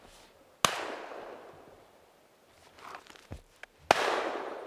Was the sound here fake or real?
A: real